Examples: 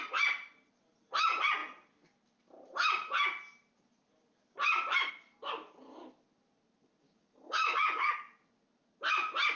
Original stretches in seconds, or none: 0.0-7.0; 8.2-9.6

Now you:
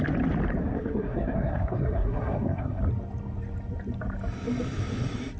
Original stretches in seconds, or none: 0.0-0.6; 2.8-5.4

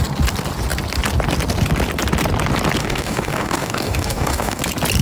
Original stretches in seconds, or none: 0.0-2.8; 4.6-5.0

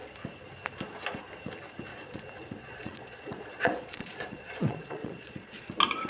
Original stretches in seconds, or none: 0.0-1.9; 5.6-6.1

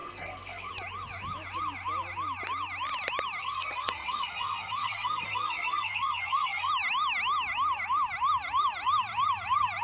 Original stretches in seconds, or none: 0.7-3.4; 6.7-9.8